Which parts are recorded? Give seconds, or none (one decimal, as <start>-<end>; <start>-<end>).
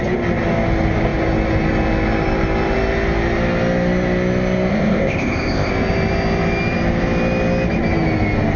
0.0-4.7; 5.7-8.6